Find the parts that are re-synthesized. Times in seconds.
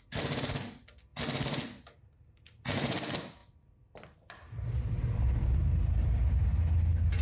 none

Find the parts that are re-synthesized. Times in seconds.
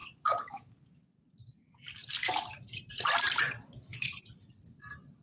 none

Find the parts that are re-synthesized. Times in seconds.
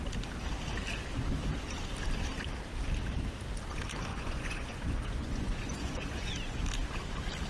4.1-6.6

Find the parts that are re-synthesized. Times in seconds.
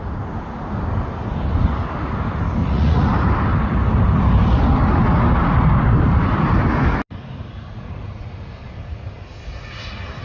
2.6-3.1; 7.4-8.3